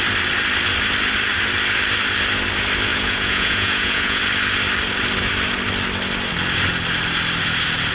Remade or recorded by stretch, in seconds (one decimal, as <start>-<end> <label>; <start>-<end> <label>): 0.0-2.9 recorded; 2.9-4.2 remade; 4.2-7.9 recorded